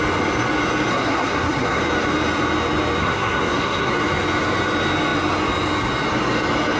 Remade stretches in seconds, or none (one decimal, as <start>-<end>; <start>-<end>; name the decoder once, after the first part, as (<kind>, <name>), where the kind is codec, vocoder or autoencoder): 0.9-1.8 (codec, SNAC); 3.0-3.9